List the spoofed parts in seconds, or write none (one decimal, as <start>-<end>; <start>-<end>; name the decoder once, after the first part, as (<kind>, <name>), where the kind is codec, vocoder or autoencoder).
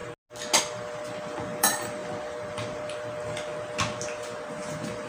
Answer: 0.6-3.5 (vocoder, BigVGAN v2); 4.5-5.1